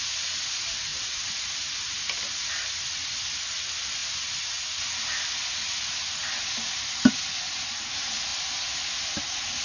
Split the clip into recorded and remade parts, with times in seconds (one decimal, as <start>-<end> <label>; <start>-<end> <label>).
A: 0.0-0.9 recorded; 0.9-1.5 remade; 1.5-8.3 recorded; 8.3-8.9 remade; 8.9-9.6 recorded